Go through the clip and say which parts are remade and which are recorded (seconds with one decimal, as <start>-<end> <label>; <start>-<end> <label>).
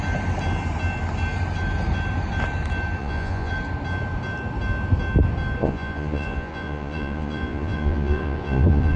0.0-3.0 recorded; 3.0-3.5 remade; 3.5-5.6 recorded; 5.6-9.0 remade